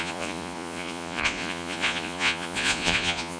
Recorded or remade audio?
remade